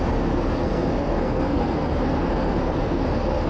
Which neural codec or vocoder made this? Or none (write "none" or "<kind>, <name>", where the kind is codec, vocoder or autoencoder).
codec, SNAC